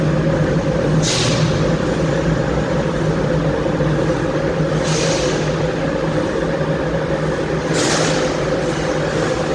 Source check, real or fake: real